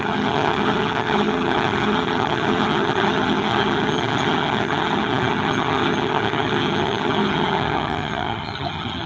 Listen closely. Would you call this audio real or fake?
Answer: fake